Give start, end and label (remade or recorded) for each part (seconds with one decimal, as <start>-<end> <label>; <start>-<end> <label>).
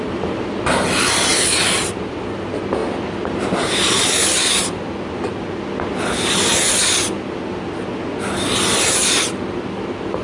0.0-10.2 recorded